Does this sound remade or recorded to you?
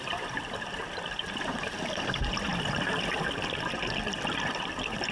remade